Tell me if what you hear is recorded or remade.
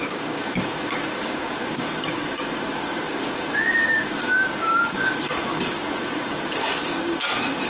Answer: remade